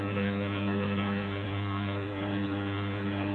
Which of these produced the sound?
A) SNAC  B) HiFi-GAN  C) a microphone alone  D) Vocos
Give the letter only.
A